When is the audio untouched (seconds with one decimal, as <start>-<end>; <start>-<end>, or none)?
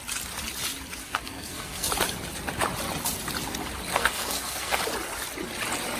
0.0-1.0; 1.9-3.9; 4.8-6.0